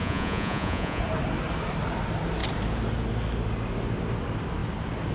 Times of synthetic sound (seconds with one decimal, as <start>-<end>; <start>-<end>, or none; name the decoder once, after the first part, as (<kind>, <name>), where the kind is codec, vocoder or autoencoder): 0.0-1.0 (vocoder, Vocos)